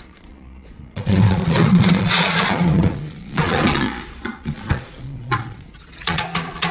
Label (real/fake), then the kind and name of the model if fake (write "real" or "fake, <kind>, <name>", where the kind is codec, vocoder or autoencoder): fake, vocoder, Vocos